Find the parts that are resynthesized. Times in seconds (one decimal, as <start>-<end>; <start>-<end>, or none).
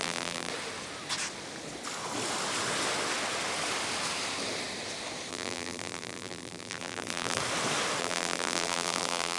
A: 0.0-0.5; 5.3-7.4; 8.0-9.4